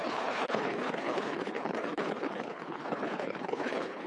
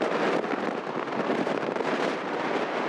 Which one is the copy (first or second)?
first